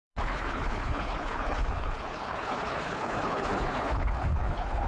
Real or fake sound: fake